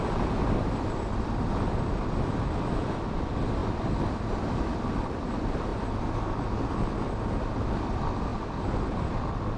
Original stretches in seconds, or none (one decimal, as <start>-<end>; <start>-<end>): 3.6-4.4; 5.7-7.4